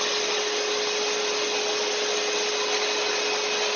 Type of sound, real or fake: real